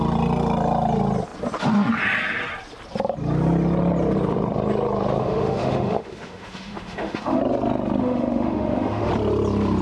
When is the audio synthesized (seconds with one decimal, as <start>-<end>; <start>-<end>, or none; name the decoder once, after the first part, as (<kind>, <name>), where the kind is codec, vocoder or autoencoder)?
5.2-7.4 (autoencoder, DAC-VAE); 8.0-9.1